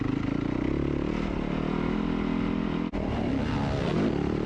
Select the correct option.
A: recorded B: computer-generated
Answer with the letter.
A